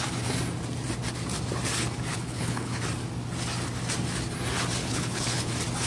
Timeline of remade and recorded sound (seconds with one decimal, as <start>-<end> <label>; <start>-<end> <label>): 0.0-2.1 recorded; 2.1-2.8 remade; 2.8-4.8 recorded; 4.8-5.5 remade; 5.5-5.9 recorded